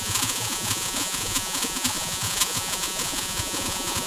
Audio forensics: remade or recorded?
remade